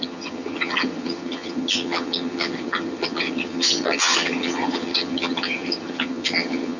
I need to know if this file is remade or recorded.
remade